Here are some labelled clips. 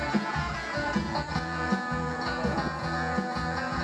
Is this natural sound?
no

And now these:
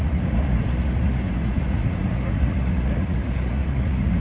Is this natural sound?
no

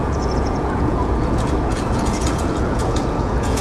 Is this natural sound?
no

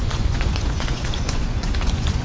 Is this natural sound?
no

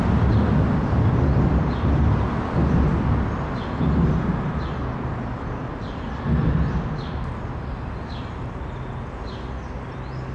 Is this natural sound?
yes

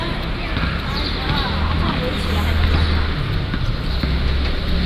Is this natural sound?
yes